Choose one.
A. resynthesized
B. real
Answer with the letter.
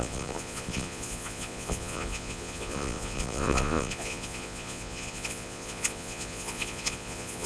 A